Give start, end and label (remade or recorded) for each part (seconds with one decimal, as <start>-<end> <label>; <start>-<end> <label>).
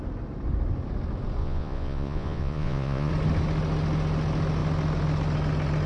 0.0-1.4 recorded; 1.4-3.1 remade; 3.1-5.9 recorded